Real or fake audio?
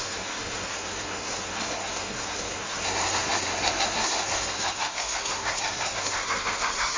fake